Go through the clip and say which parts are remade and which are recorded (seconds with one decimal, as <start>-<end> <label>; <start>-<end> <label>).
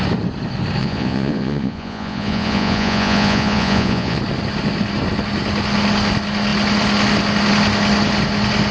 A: 0.0-0.8 recorded; 0.8-4.2 remade; 4.2-8.7 recorded